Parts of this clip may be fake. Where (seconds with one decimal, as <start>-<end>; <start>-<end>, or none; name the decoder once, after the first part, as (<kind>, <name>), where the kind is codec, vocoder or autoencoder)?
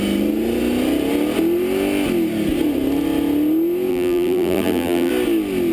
3.9-5.1 (vocoder, BigVGAN v2)